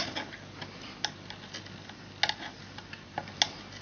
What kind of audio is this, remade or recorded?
recorded